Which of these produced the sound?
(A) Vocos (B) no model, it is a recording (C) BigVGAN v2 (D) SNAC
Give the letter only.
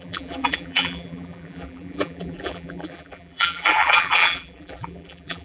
C